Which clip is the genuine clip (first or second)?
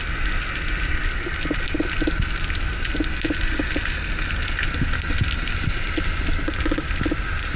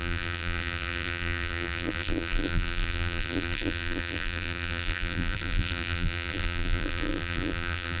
first